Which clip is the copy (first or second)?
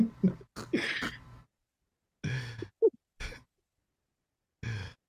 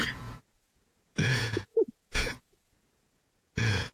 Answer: second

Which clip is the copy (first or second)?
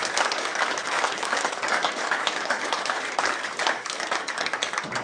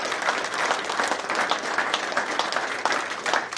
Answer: first